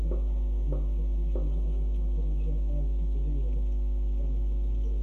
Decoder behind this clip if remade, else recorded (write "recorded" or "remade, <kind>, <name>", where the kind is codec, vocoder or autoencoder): recorded